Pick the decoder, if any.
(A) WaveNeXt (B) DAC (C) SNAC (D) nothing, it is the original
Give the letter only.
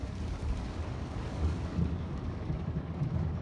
B